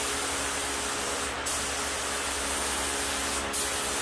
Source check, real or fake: real